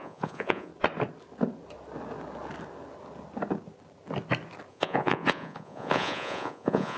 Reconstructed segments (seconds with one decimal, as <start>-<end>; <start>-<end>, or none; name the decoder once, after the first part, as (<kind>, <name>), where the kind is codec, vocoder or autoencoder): 0.0-0.7 (vocoder, Vocos); 4.7-7.0